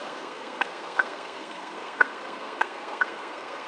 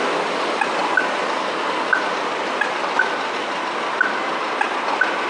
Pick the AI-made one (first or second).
first